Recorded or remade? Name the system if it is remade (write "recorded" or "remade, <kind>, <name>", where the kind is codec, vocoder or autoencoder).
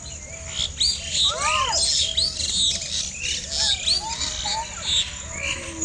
recorded